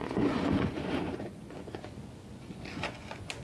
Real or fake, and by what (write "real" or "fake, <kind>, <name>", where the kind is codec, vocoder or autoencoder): fake, vocoder, Vocos